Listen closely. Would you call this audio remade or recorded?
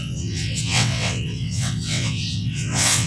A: remade